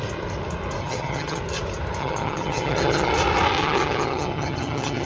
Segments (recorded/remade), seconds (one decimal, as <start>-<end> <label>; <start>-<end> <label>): 0.0-0.8 recorded; 0.8-1.4 remade; 1.4-2.0 recorded; 2.0-3.1 remade; 3.1-3.6 recorded; 3.6-5.1 remade